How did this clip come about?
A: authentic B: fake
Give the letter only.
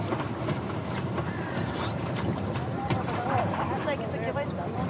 B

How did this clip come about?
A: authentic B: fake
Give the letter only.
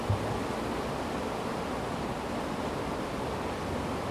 A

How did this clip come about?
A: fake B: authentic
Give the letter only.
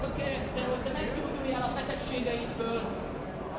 B